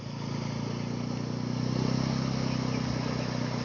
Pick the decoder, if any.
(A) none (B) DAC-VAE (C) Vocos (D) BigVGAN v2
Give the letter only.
A